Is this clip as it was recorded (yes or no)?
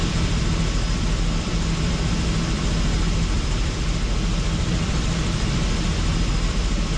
no